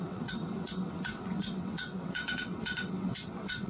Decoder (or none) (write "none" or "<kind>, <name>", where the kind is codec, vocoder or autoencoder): vocoder, WaveNeXt